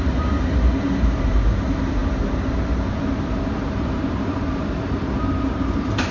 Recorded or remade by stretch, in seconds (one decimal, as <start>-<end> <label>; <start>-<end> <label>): 0.0-2.0 remade; 2.0-3.3 recorded; 3.3-6.1 remade